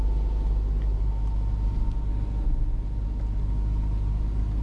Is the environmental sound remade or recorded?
recorded